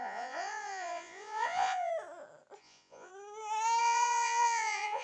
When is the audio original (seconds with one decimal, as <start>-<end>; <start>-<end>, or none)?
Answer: 1.9-2.6; 3.1-3.8